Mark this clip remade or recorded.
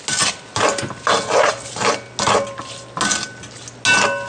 recorded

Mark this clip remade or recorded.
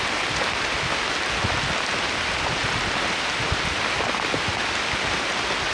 recorded